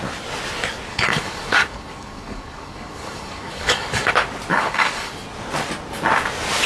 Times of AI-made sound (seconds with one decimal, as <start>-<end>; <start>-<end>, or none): 0.9-4.1; 4.5-5.1